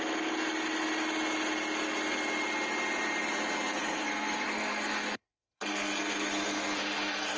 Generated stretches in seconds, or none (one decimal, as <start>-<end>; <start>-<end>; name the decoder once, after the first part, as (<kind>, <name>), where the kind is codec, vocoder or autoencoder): 3.8-7.4 (codec, SNAC)